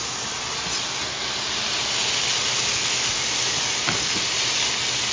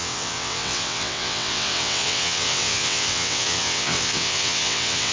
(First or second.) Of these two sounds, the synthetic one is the second